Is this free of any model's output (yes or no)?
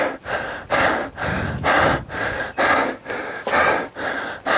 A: yes